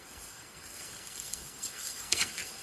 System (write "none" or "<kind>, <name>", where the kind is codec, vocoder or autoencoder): codec, SNAC